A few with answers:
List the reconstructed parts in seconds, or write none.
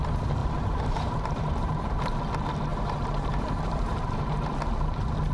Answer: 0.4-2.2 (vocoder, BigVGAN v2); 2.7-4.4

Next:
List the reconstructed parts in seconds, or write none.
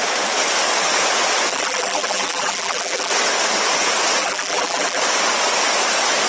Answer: 1.5-3.1 (vocoder, BigVGAN v2); 4.2-5.0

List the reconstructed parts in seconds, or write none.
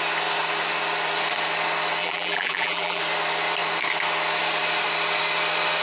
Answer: 2.0-3.0 (vocoder, BigVGAN v2)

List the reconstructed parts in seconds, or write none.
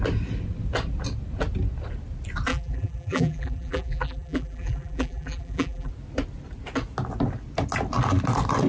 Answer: 2.5-5.9 (vocoder, BigVGAN v2)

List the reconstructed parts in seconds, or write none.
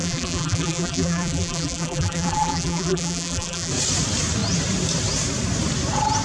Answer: 0.0-3.7 (vocoder, BigVGAN v2)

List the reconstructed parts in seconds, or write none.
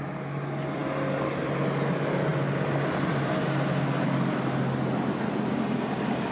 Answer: none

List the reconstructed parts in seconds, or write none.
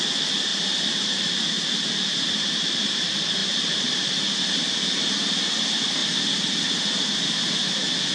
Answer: 0.5-2.9 (vocoder, BigVGAN v2); 3.4-4.1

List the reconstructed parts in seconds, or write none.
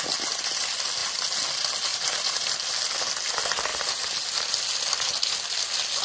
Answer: 1.9-2.4 (vocoder, BigVGAN v2); 3.7-4.3